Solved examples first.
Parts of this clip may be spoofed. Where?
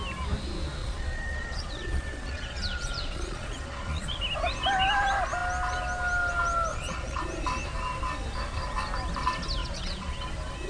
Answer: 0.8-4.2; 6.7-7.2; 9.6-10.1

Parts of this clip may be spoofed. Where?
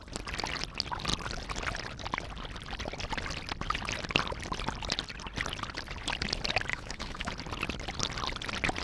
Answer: 6.7-7.3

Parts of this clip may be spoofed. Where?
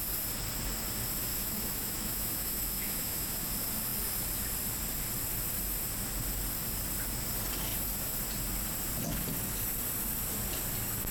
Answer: 1.3-3.5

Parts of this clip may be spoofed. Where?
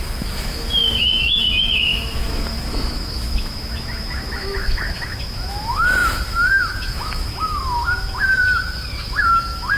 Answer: 0.0-9.8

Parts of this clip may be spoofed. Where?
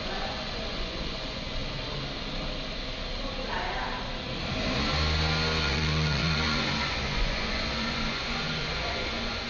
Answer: 0.0-1.6; 5.6-9.5